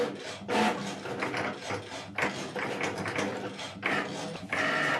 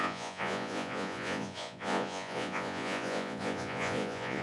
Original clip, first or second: first